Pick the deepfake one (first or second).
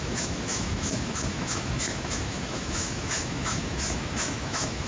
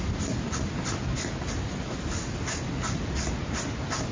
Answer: first